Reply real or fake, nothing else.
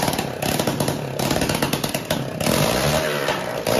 fake